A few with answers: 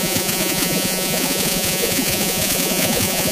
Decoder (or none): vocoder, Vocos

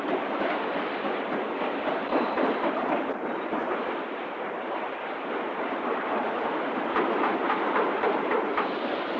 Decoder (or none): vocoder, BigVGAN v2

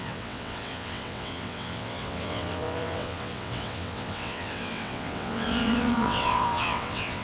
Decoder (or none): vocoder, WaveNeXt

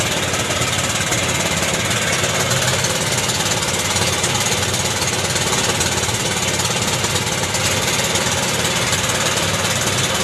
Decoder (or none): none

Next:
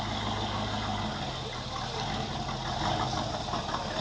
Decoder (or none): none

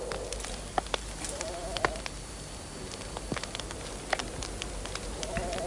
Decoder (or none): none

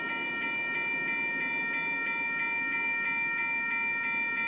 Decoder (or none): none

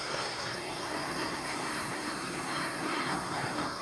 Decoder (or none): codec, SNAC